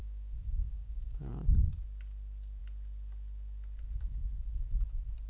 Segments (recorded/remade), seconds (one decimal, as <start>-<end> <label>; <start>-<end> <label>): 0.0-1.5 remade; 1.5-5.3 recorded